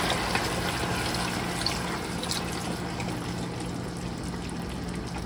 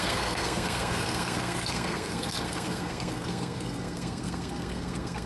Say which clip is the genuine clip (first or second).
first